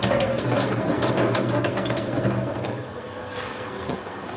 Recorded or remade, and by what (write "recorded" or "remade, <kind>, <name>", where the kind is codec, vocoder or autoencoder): remade, codec, SNAC